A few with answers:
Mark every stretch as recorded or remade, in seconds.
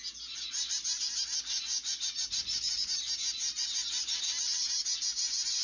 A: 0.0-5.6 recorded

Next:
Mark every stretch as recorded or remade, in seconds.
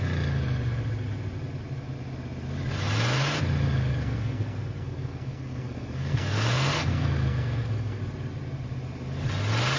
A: 0.0-3.9 recorded; 3.9-8.0 remade; 8.0-9.8 recorded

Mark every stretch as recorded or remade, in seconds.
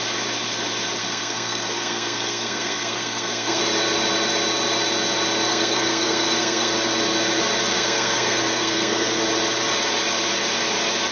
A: 0.0-1.0 recorded; 1.0-3.6 remade; 3.6-5.5 recorded; 5.5-6.7 remade; 6.7-7.7 recorded; 7.7-9.2 remade; 9.2-11.1 recorded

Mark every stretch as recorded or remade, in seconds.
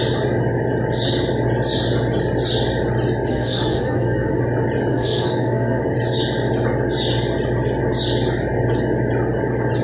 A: 0.0-3.3 recorded; 3.3-4.4 remade; 4.4-4.9 recorded; 4.9-5.8 remade; 5.8-9.8 recorded